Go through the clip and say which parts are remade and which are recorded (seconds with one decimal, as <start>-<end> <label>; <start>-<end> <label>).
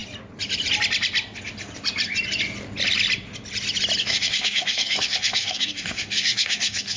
0.0-4.0 recorded; 4.0-7.0 remade